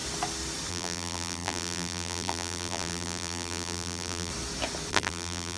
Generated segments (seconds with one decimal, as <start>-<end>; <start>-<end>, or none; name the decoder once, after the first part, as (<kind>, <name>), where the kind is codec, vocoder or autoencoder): 0.7-4.3 (vocoder, BigVGAN v2); 4.9-5.6